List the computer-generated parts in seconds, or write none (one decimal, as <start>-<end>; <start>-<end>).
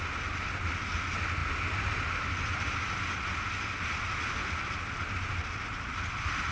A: none